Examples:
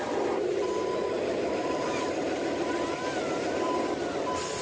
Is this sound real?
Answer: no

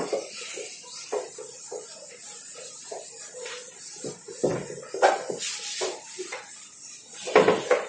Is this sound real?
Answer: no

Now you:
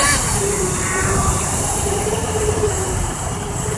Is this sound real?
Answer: no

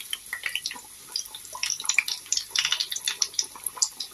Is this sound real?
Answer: no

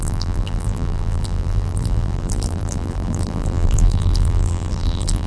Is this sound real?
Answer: no